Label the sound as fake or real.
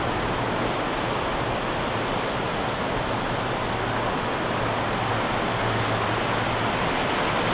real